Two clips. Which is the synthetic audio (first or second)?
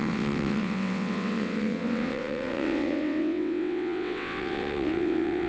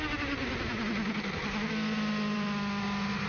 first